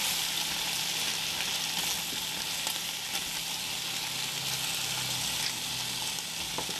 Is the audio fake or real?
real